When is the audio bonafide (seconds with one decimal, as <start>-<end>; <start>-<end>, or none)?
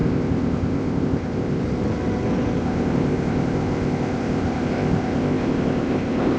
1.6-2.6